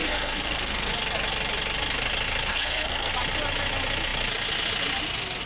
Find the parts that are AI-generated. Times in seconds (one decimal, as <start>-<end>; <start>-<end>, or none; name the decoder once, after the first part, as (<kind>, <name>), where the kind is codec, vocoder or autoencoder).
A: 0.0-0.9 (codec, SNAC); 2.5-3.1